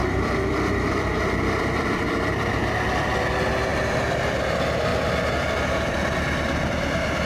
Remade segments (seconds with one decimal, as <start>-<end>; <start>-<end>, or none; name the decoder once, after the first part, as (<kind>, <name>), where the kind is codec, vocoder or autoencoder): 0.0-2.4 (vocoder, BigVGAN v2); 3.7-4.4

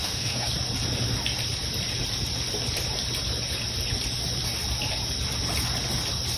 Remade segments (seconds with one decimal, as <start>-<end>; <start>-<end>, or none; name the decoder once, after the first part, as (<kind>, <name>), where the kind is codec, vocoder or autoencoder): 0.0-0.5 (autoencoder, DAC-VAE)